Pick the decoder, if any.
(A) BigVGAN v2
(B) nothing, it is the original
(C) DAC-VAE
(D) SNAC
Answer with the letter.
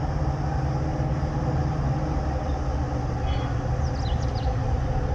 B